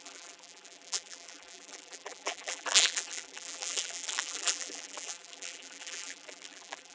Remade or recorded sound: remade